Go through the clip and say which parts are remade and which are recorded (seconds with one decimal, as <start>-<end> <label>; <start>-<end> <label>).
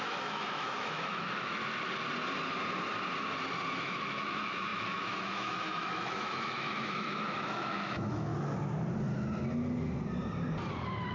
0.0-1.6 remade; 1.6-3.8 recorded; 3.8-8.3 remade; 8.3-11.1 recorded